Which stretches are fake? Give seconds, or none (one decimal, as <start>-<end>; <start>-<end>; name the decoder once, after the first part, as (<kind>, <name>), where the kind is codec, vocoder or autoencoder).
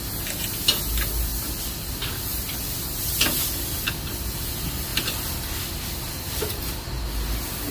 1.3-1.9 (vocoder, BigVGAN v2); 2.3-3.6; 4.9-6.7